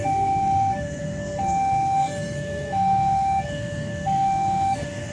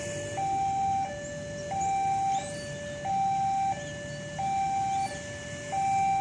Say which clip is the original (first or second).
second